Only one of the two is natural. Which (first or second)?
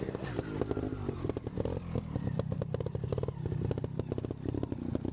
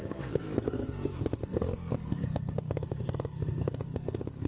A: first